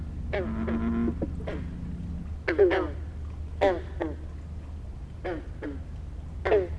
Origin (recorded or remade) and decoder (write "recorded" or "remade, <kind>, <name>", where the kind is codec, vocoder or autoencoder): recorded